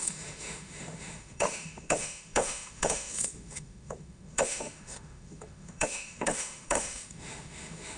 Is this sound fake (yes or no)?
yes